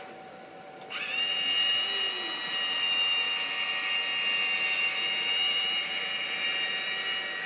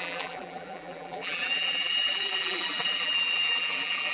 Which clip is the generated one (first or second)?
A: second